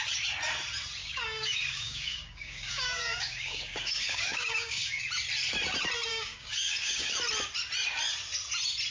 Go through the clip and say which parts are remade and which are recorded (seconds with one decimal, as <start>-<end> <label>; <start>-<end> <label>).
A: 0.0-1.0 recorded; 1.0-5.0 remade; 5.0-6.1 recorded; 6.1-7.2 remade; 7.2-8.9 recorded